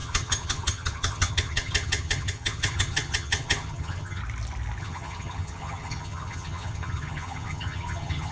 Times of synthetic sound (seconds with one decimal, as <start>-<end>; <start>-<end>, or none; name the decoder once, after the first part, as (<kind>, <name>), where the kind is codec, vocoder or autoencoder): 0.0-4.2 (vocoder, HiFi-GAN); 4.8-8.3